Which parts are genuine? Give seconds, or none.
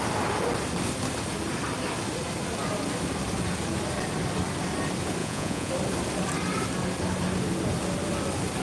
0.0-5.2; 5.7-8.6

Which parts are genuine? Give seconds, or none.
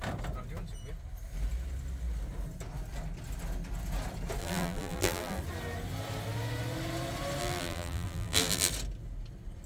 0.0-4.4; 5.4-7.4; 8.7-9.7